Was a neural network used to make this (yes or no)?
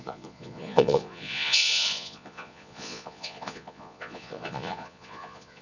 yes